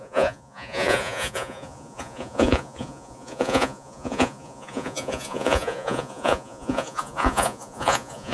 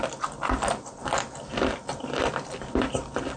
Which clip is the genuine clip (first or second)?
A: second